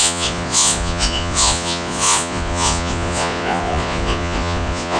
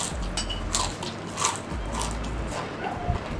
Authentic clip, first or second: second